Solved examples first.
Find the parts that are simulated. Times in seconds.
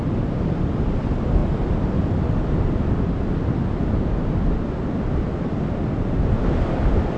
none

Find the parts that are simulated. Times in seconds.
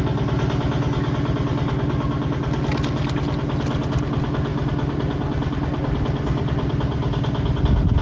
none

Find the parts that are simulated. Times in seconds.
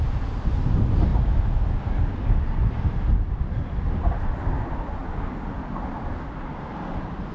none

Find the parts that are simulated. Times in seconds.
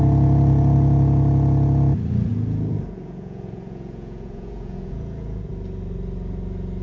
2.3-5.5 (vocoder, Vocos)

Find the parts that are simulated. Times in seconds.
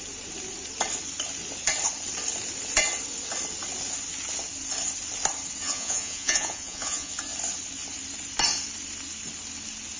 5.6-7.1 (vocoder, Vocos)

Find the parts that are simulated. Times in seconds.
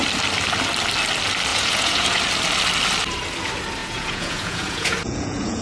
1.5-2.2 (vocoder, Vocos); 3.8-5.6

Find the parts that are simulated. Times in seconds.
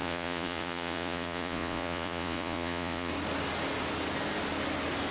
0.0-3.1 (vocoder, Vocos)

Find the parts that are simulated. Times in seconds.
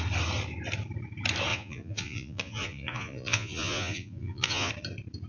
1.5-4.7 (vocoder, Vocos)